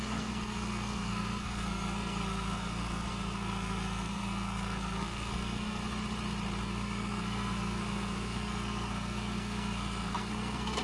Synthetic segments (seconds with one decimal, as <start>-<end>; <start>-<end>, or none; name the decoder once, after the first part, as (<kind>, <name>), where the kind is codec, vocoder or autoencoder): 0.0-5.8 (codec, SNAC); 6.6-10.8